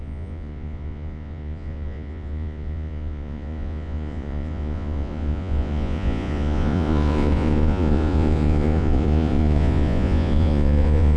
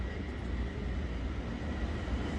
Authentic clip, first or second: second